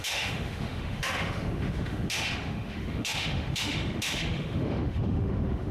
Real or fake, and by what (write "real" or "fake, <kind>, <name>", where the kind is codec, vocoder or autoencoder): fake, autoencoder, DAC-VAE